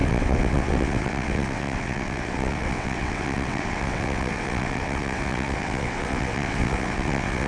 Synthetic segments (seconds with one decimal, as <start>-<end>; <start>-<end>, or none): 0.0-7.5